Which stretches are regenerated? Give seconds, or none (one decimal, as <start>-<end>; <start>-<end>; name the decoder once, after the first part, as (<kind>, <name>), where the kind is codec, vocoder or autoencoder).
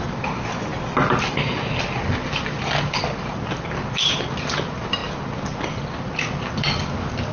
none